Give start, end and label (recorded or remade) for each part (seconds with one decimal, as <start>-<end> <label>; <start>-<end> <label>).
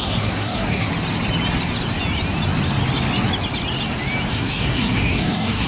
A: 0.0-0.9 remade; 0.9-4.3 recorded; 4.3-5.7 remade